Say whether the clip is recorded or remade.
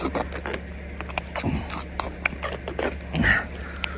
recorded